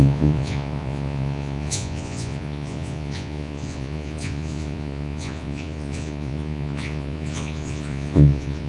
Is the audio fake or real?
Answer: fake